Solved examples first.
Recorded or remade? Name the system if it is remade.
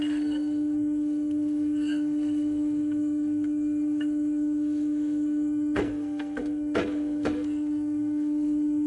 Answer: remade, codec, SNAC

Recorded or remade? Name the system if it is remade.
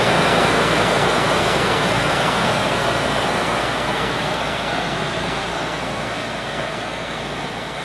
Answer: remade, codec, SNAC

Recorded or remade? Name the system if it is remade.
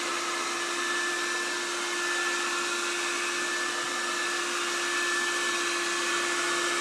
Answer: recorded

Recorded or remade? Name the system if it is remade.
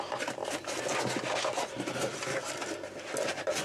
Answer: recorded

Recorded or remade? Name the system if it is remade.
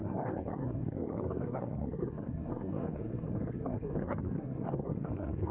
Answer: remade, codec, SNAC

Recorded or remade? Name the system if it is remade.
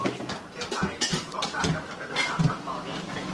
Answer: recorded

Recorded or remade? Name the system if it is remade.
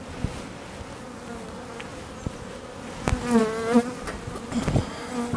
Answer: recorded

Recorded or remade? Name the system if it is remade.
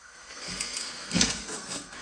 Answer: remade, codec, SNAC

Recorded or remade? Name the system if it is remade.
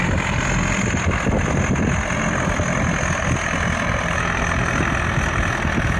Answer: recorded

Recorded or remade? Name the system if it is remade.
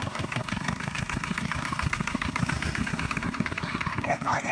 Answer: remade, codec, SNAC